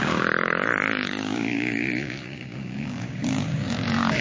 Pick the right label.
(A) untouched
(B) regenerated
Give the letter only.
B